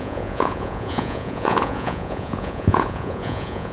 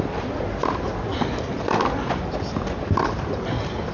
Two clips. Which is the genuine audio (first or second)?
second